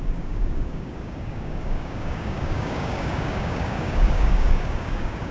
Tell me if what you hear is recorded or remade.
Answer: remade